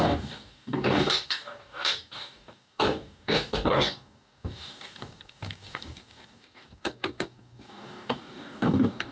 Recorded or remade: remade